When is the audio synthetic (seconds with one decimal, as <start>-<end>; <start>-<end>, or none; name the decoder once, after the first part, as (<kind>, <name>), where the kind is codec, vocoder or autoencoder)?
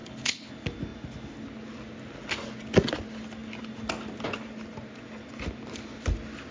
0.0-0.5 (codec, HILCodec)